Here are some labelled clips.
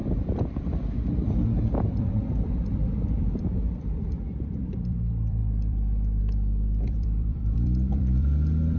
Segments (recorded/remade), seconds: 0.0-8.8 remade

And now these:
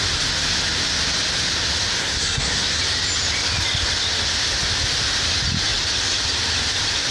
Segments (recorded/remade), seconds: 0.0-2.0 recorded; 2.0-2.8 remade; 2.8-7.1 recorded

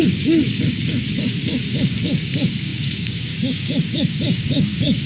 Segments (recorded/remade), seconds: 0.0-5.1 remade

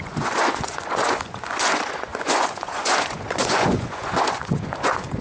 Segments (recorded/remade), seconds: 0.0-5.2 remade

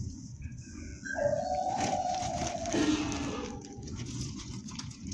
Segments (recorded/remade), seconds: 0.0-0.9 remade; 0.9-1.7 recorded; 1.7-2.4 remade; 2.4-3.8 recorded; 3.8-5.1 remade

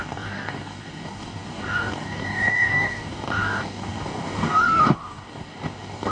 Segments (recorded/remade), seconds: 0.0-6.1 remade